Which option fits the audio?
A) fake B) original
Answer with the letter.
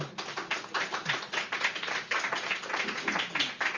B